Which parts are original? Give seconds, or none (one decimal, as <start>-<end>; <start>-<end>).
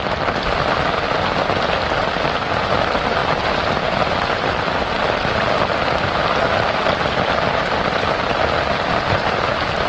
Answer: 0.0-9.9